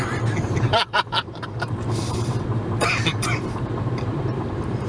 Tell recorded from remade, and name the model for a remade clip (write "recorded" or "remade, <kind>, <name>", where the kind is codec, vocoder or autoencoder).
remade, vocoder, BigVGAN v2